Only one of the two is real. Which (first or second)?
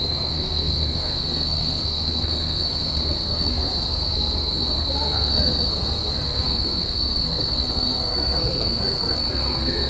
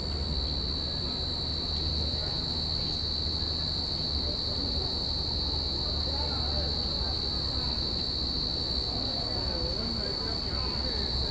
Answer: second